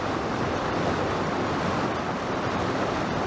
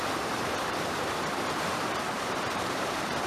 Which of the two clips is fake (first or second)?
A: second